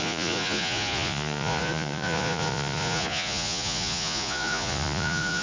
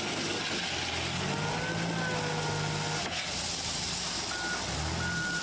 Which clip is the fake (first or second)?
first